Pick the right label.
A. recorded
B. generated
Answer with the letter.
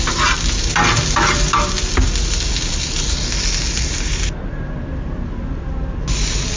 A